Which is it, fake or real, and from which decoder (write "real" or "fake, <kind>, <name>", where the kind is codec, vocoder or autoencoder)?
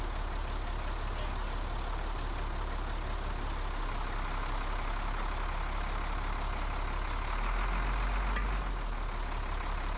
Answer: real